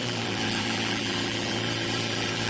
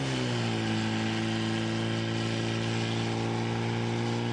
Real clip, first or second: second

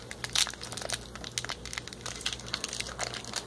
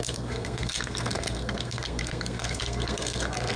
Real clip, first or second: first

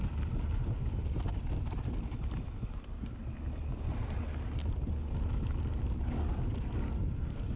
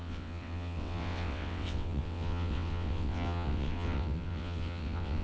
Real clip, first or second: first